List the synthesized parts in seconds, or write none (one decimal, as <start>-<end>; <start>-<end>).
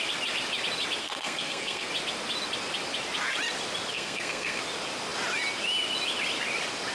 1.0-1.9; 3.9-4.6